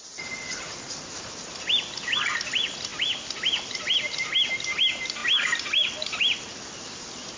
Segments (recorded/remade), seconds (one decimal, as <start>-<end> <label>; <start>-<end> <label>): 0.0-7.4 recorded